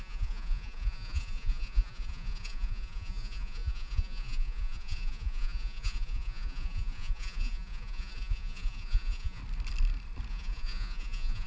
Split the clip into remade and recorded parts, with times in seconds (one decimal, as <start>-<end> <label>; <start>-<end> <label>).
0.0-9.4 remade; 9.4-10.3 recorded; 10.3-11.5 remade